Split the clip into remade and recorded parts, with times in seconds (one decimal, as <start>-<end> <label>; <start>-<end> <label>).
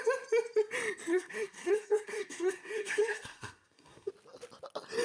0.0-1.1 recorded; 1.1-4.1 remade; 4.1-5.0 recorded